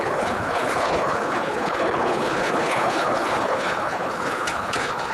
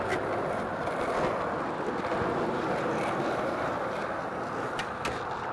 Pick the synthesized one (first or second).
first